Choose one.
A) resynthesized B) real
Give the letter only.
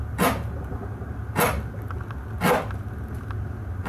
B